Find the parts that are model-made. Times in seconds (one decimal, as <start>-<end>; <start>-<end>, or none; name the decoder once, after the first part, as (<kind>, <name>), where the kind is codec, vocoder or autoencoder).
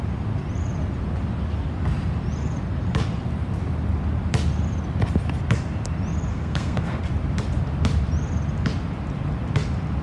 6.3-7.0 (codec, SNAC)